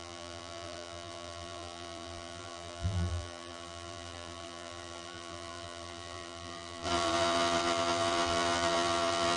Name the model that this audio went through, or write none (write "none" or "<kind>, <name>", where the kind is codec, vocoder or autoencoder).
vocoder, BigVGAN v2